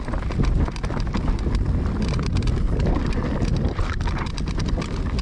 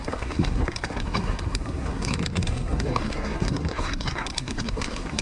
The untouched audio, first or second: first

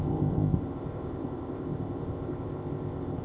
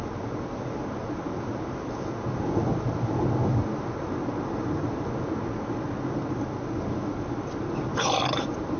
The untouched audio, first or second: second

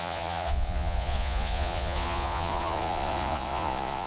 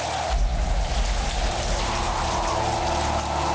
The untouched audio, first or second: second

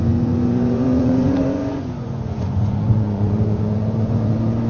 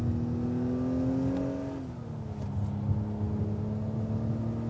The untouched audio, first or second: second